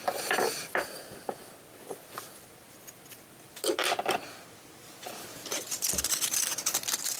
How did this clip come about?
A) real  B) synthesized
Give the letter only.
A